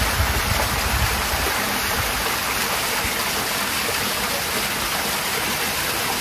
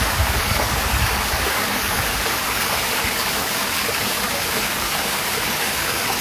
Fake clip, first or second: second